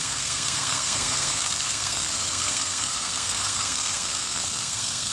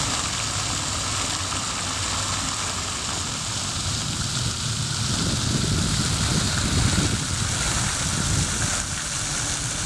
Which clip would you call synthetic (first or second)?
first